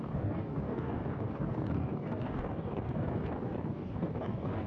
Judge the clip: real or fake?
fake